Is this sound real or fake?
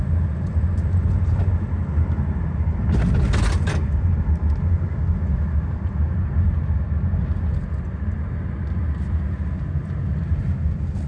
real